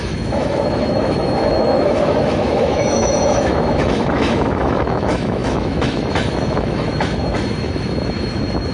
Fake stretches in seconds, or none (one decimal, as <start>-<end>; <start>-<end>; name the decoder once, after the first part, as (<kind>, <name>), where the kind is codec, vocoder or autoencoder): 0.0-8.7 (autoencoder, DAC-VAE)